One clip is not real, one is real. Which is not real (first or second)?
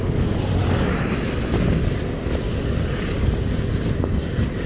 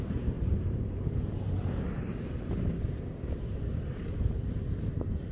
second